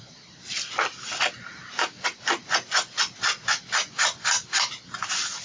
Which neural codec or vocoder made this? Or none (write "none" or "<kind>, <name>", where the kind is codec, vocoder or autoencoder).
none